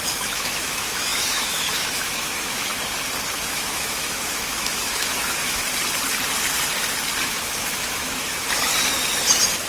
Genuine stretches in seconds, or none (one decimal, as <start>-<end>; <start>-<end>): 2.7-3.3; 5.6-7.2; 8.7-9.7